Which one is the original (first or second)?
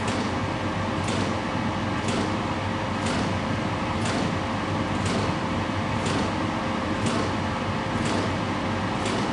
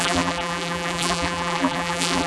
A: first